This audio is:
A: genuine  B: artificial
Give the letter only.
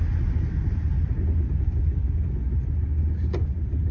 A